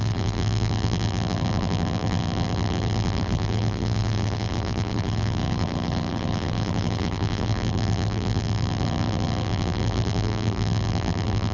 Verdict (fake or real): fake